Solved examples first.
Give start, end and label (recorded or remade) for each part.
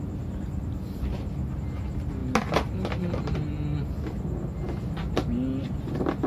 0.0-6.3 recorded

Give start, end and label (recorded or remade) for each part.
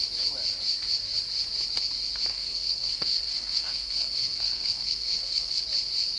0.0-2.3 recorded; 2.3-5.6 remade; 5.6-6.2 recorded